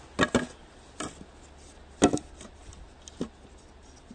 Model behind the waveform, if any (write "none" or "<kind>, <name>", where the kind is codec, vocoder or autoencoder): none